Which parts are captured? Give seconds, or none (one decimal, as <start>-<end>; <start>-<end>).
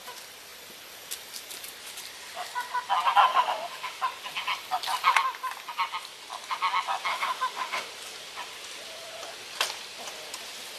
0.0-3.3; 4.0-7.1; 7.9-10.8